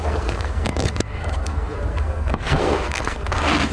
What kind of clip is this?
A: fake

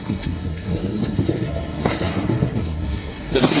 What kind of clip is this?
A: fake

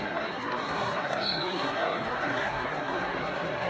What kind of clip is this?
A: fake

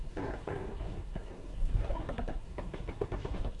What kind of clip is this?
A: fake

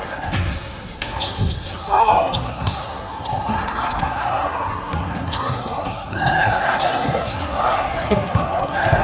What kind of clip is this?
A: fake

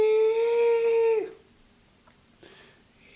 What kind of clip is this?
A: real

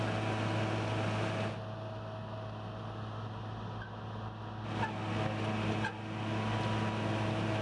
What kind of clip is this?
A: real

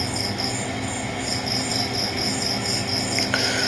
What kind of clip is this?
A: real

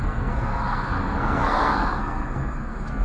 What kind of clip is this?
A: fake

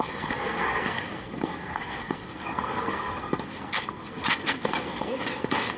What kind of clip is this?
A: fake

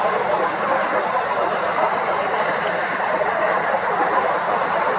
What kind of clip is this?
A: real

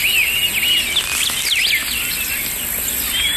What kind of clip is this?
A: real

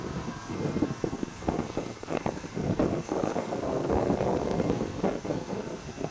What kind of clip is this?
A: fake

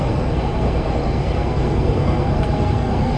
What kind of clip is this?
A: fake